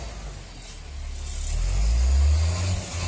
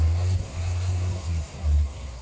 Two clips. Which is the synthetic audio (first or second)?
second